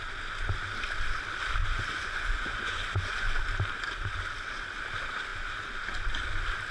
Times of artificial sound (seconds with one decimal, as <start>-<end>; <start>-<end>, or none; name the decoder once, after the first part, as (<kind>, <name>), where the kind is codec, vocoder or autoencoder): 1.6-3.4 (vocoder, Vocos)